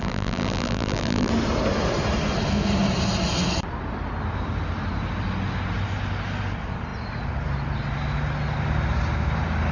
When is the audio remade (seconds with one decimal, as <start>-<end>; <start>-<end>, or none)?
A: 0.0-1.3